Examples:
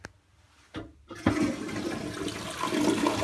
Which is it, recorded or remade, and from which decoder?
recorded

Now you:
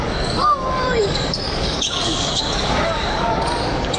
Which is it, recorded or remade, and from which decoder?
remade, codec, DAC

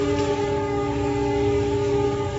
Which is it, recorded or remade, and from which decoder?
remade, codec, DAC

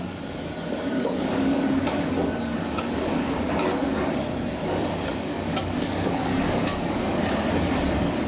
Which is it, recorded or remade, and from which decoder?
remade, codec, DAC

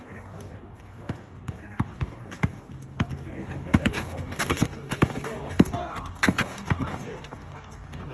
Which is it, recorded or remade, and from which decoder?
remade, codec, DAC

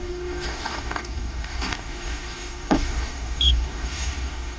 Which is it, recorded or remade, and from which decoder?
remade, codec, DAC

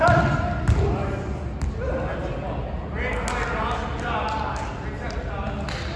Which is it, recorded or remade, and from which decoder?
recorded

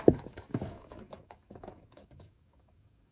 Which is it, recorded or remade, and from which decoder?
remade, codec, DAC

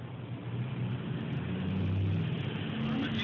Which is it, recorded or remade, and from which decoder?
recorded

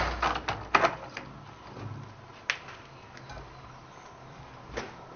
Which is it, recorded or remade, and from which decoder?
recorded